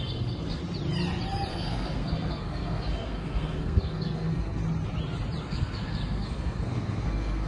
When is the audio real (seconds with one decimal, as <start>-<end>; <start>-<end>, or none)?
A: 0.6-1.5; 4.6-5.4